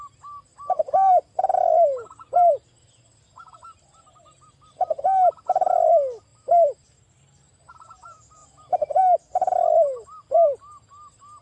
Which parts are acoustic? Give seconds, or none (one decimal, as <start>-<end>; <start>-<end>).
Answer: 0.0-0.5; 1.4-6.3; 7.7-8.4; 9.0-11.4